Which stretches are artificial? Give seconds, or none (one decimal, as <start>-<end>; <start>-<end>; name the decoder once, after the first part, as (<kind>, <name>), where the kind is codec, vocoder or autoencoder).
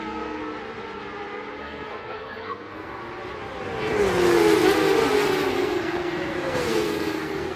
0.0-0.4 (codec, SNAC); 1.6-3.0; 5.5-7.6